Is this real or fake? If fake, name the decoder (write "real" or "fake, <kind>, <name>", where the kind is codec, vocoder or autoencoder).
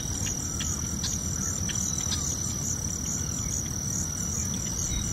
real